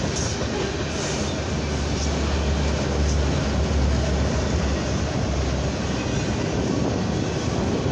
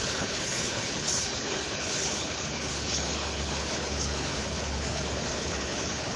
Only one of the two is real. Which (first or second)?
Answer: first